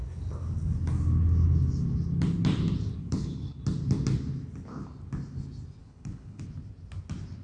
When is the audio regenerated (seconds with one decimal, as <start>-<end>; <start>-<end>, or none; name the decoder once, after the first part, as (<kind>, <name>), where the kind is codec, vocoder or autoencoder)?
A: 3.0-3.6 (codec, HILCodec); 5.8-6.4